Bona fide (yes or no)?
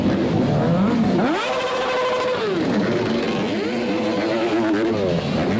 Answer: yes